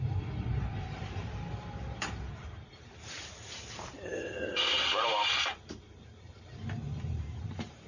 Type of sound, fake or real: fake